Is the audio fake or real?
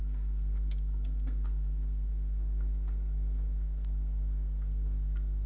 fake